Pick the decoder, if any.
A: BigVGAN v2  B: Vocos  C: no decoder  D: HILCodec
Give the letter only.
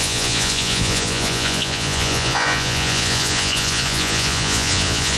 B